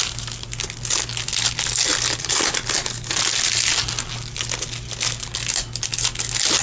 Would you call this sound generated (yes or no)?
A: no